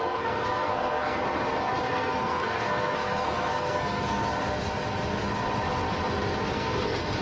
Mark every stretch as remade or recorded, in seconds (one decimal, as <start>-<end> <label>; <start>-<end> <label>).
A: 0.0-1.2 remade; 1.2-1.9 recorded; 1.9-4.2 remade; 4.2-6.5 recorded; 6.5-7.2 remade